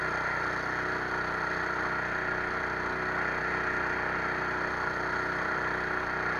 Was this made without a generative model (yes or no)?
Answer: yes